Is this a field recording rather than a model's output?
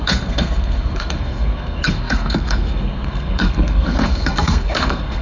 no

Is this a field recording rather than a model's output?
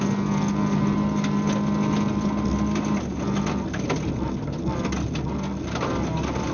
yes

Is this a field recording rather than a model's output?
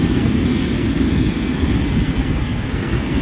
no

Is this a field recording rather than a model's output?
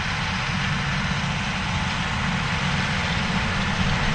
yes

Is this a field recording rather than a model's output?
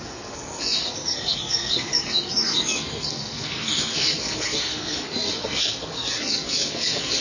no